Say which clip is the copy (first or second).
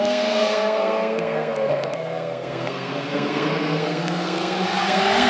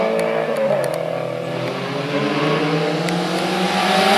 first